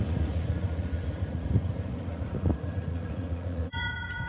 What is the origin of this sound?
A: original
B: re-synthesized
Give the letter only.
B